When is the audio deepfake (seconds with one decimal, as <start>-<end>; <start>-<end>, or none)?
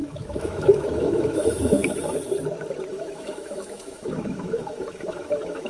0.0-1.8; 2.9-5.7